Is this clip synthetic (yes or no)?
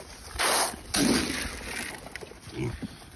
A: no